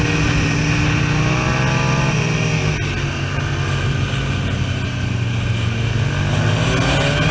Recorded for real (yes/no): yes